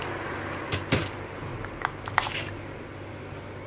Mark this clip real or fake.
real